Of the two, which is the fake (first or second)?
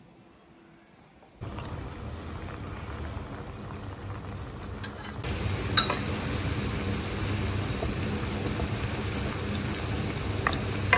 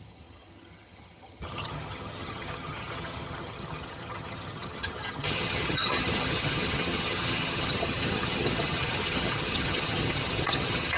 second